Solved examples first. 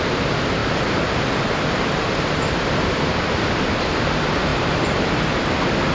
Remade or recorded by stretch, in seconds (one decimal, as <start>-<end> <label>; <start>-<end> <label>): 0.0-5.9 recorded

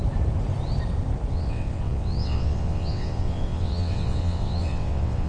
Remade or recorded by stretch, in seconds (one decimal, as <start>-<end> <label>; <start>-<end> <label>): 0.0-1.3 recorded; 1.3-5.3 remade

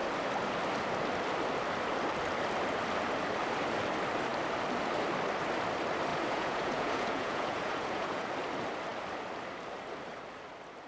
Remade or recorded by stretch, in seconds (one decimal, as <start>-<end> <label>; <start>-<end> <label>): 0.0-6.1 recorded; 6.1-8.3 remade; 8.3-10.9 recorded

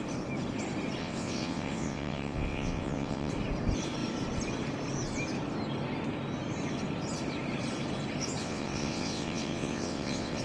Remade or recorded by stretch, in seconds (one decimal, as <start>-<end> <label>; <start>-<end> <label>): 0.0-1.0 recorded; 1.0-3.3 remade; 3.3-8.4 recorded; 8.4-10.4 remade